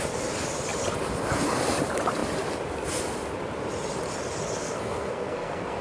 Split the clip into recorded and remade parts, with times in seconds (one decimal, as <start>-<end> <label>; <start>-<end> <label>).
0.0-4.6 recorded; 4.6-5.8 remade